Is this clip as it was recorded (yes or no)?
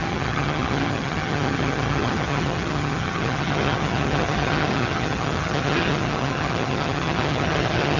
no